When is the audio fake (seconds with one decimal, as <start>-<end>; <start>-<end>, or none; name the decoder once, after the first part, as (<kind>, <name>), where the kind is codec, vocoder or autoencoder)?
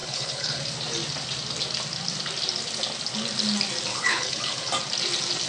0.0-0.6 (codec, HILCodec); 3.9-4.7